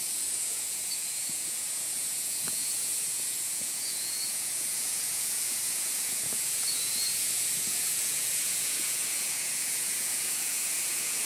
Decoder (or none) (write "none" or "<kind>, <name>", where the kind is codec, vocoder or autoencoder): vocoder, Vocos